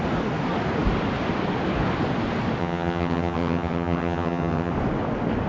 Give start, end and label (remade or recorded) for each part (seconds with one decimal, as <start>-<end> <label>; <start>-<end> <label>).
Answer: 0.0-2.6 recorded; 2.6-4.7 remade; 4.7-5.5 recorded